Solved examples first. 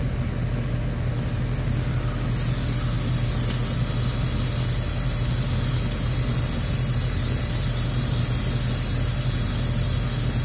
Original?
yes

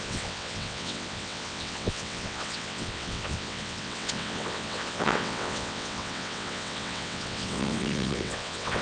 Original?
no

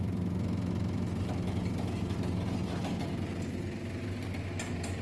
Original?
yes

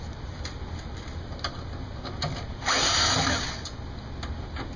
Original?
yes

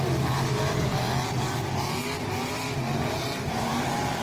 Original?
yes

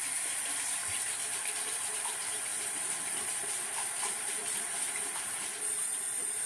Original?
no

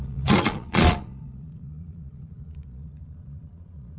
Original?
no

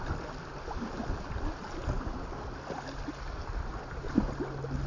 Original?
yes